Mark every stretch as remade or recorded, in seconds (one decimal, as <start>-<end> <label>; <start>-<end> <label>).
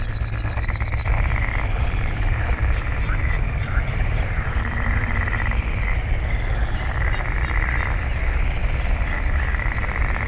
0.0-1.0 recorded; 1.0-5.2 remade; 5.2-10.3 recorded